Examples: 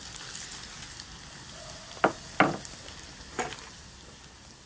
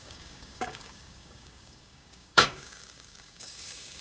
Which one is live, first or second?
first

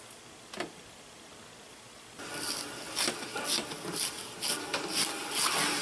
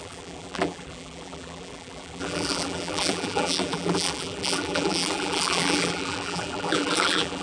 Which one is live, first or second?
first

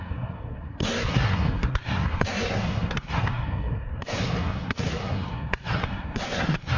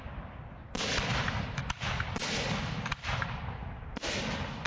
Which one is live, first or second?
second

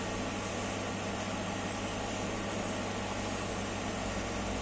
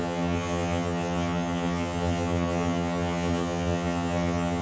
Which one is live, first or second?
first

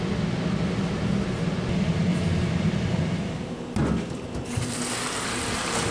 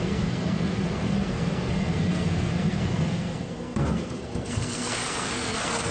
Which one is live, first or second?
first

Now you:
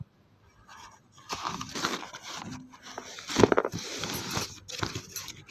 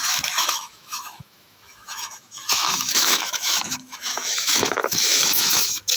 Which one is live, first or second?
first